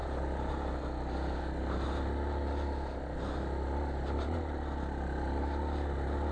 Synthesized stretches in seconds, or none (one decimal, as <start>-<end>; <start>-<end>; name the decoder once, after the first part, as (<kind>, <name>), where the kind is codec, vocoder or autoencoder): none